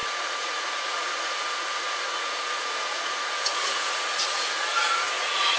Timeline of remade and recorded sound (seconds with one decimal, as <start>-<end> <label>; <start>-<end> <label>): 0.0-5.6 remade